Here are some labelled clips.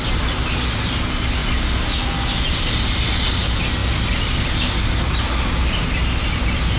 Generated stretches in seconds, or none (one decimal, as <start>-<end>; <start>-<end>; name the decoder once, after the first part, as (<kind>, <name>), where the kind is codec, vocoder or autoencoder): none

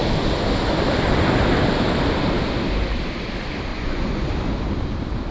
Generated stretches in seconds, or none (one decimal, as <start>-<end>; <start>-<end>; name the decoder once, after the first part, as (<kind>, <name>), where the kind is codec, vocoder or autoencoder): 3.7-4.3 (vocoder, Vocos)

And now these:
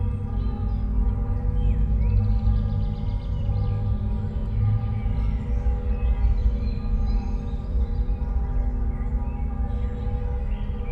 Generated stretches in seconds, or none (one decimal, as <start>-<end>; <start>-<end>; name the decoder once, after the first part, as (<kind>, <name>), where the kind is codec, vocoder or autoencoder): 6.4-8.2 (vocoder, BigVGAN v2)

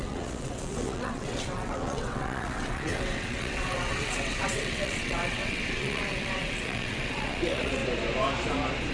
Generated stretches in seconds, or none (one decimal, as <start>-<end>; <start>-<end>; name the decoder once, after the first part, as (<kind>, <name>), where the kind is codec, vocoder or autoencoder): 0.0-7.8 (vocoder, WaveNeXt)